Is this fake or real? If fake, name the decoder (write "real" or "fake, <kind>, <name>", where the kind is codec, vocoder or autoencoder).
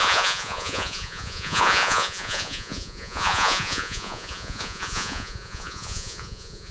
fake, vocoder, Vocos